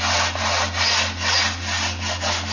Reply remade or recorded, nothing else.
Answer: recorded